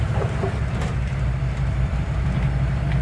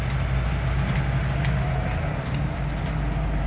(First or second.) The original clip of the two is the second